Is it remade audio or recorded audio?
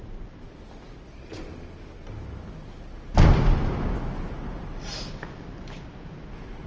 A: recorded